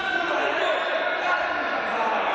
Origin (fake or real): real